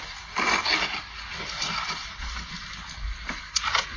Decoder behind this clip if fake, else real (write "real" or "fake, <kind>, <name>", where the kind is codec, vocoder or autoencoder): real